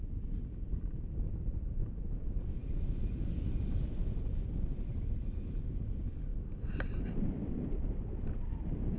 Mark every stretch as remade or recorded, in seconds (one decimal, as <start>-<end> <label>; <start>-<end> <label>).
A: 0.0-9.0 recorded